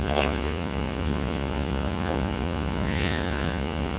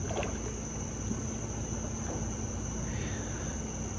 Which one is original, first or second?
second